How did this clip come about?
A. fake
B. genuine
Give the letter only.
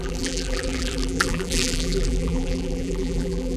A